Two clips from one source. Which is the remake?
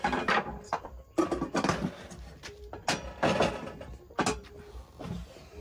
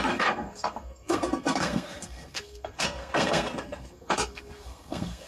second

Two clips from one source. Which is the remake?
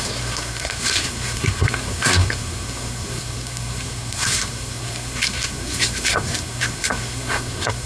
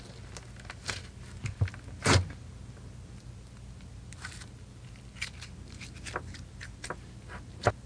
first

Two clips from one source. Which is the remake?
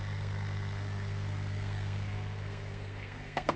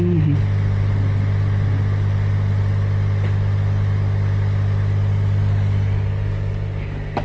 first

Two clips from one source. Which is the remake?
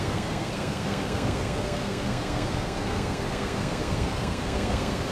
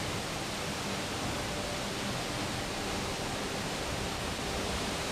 first